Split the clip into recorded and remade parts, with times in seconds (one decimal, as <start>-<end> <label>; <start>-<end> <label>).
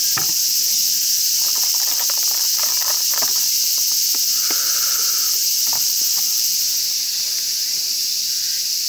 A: 0.0-0.8 recorded; 0.8-4.2 remade; 4.2-5.4 recorded; 5.4-6.8 remade; 6.8-8.9 recorded